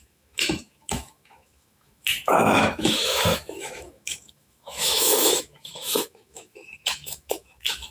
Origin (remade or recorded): remade